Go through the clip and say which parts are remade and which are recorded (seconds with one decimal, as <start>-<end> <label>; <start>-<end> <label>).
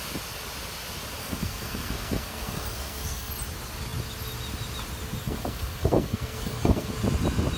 0.0-1.2 recorded; 1.2-3.3 remade; 3.3-5.2 recorded; 5.2-6.9 remade; 6.9-7.6 recorded